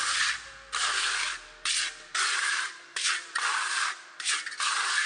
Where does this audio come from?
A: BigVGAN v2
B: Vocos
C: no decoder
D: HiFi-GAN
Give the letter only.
C